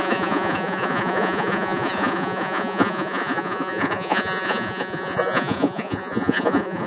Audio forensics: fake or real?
fake